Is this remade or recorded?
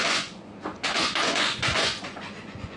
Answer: remade